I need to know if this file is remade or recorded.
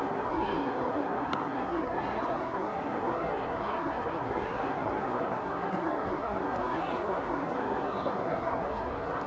remade